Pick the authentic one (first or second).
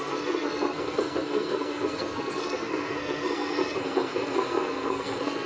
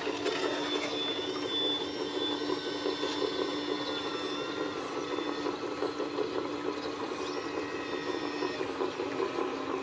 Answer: second